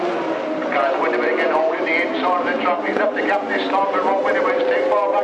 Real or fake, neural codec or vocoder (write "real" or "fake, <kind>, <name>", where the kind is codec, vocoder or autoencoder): fake, vocoder, BigVGAN v2